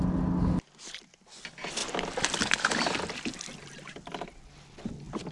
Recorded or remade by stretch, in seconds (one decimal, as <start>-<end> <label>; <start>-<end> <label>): 0.0-5.3 recorded